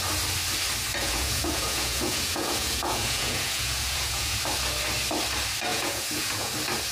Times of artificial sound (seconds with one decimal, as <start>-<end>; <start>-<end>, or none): 1.0-4.4; 5.7-6.5